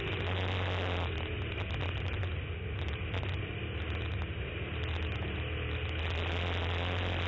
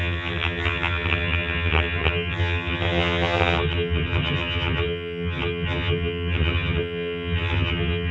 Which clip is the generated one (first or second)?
second